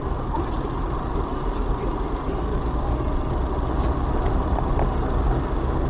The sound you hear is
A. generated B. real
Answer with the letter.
A